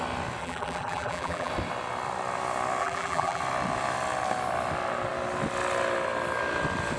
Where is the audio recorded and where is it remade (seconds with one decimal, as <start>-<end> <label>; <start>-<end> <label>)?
0.0-0.4 recorded; 0.4-1.5 remade; 1.5-2.8 recorded; 2.8-3.4 remade; 3.4-7.0 recorded